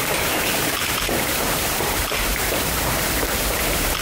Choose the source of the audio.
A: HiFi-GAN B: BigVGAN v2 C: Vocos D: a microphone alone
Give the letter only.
B